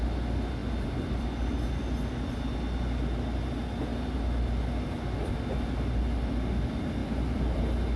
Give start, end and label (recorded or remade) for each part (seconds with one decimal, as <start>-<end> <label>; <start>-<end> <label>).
0.0-7.0 recorded; 7.0-7.6 remade; 7.6-8.0 recorded